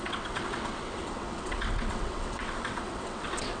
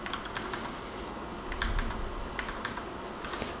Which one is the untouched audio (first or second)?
second